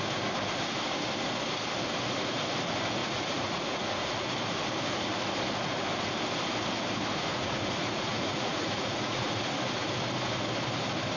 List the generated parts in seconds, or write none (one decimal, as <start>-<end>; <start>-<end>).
3.0-4.3; 7.3-9.4